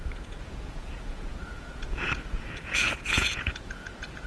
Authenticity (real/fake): fake